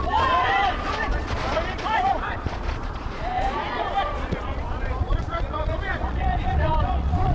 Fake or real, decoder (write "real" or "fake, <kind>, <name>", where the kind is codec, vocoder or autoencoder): fake, vocoder, Vocos